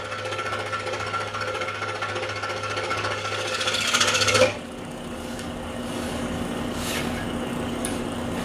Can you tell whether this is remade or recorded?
remade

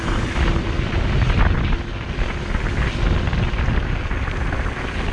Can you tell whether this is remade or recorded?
recorded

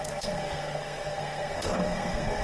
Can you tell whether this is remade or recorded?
remade